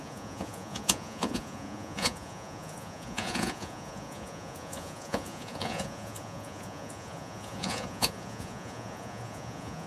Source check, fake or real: fake